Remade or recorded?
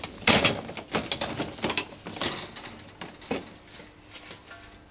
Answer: recorded